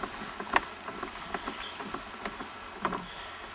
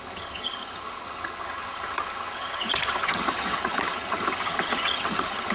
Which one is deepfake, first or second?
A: second